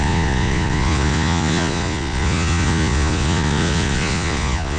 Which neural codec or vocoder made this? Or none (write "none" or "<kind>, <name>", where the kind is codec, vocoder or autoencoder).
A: vocoder, Vocos